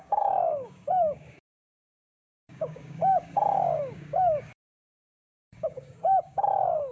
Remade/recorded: remade